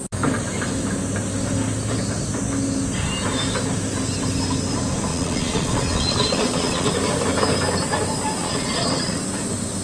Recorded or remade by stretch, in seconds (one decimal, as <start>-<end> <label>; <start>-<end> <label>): 0.0-5.1 recorded; 5.1-6.9 remade; 6.9-8.4 recorded; 8.4-9.2 remade; 9.2-9.8 recorded